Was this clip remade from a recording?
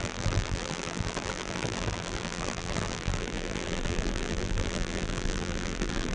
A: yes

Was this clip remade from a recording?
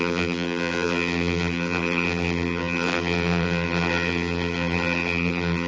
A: yes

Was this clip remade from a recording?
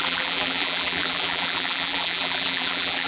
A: yes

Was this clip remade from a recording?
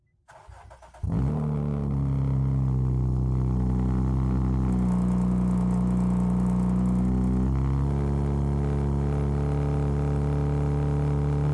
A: no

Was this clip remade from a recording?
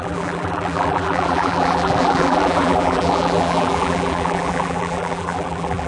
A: yes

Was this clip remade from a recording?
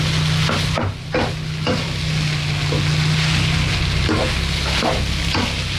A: no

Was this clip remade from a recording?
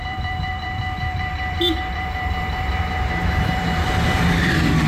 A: yes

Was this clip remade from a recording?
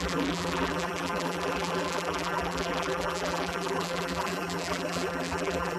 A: yes